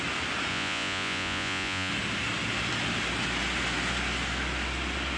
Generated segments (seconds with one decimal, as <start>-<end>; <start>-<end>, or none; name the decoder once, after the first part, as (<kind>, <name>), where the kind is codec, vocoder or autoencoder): 0.5-1.9 (vocoder, Vocos)